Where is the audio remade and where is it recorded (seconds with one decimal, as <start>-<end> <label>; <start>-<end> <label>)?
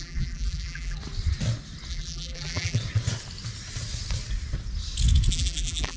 0.0-1.0 remade; 1.0-1.9 recorded; 1.9-2.8 remade; 2.8-5.3 recorded; 5.3-6.0 remade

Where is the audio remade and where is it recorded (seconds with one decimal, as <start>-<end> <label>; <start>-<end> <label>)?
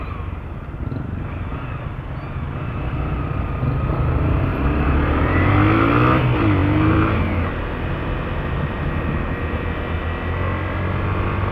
0.0-4.5 recorded; 4.5-5.5 remade; 5.5-6.6 recorded; 6.6-7.6 remade; 7.6-11.5 recorded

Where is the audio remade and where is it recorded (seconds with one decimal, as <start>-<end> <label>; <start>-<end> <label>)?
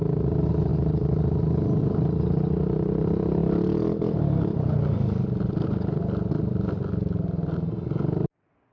0.0-8.7 recorded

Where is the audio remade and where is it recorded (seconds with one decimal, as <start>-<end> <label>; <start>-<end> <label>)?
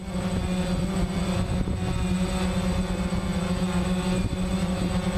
0.0-5.2 recorded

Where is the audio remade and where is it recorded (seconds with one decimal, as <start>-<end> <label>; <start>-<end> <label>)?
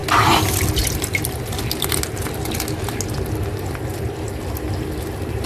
0.0-5.5 recorded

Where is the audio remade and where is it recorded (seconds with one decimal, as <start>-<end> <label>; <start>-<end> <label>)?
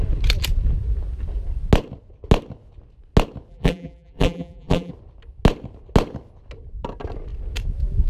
0.0-3.5 recorded; 3.5-4.9 remade; 4.9-8.1 recorded